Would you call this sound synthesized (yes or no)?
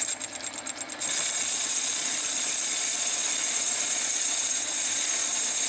no